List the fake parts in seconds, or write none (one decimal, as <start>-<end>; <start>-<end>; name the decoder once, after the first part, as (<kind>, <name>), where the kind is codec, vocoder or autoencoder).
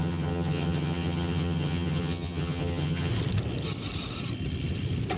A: 0.0-3.1 (vocoder, HiFi-GAN)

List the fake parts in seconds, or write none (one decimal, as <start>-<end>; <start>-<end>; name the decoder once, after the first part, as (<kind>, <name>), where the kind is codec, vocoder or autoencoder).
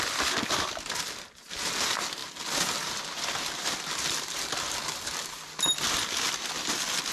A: none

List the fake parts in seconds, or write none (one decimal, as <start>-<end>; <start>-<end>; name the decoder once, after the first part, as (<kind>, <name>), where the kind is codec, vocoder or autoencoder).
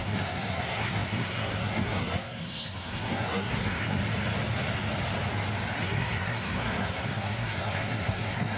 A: 0.0-4.0 (codec, SNAC); 5.8-8.6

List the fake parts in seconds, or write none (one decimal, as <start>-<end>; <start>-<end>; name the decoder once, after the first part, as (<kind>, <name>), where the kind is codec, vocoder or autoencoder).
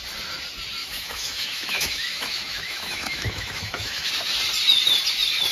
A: 0.8-4.1 (autoencoder, DAC-VAE)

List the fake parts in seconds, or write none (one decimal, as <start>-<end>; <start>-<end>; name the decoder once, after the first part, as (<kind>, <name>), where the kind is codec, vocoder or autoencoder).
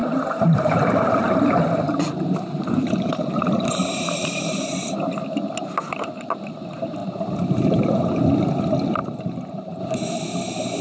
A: 0.0-4.9 (vocoder, BigVGAN v2); 7.0-8.2; 9.0-9.8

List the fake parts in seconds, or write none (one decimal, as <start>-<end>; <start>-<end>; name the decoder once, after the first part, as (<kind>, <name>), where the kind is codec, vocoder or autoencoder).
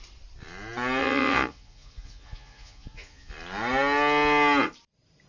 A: 1.0-3.3 (vocoder, Vocos)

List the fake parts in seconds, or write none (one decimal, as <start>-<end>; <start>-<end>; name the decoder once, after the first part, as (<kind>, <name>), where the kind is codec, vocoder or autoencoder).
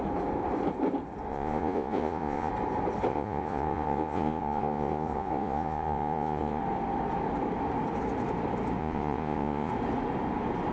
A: 1.3-2.5 (vocoder, Vocos); 3.1-6.6; 8.8-9.7